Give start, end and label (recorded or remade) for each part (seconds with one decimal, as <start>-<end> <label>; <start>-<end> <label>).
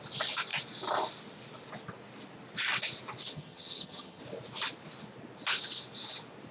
0.0-3.3 recorded; 3.3-4.2 remade; 4.2-6.5 recorded